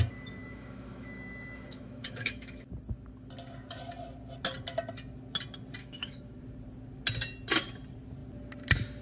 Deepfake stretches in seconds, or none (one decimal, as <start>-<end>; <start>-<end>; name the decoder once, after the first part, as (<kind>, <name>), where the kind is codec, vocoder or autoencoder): 0.4-2.6 (autoencoder, DAC-VAE); 5.8-6.4